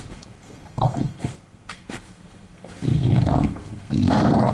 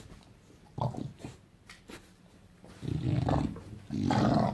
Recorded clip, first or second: second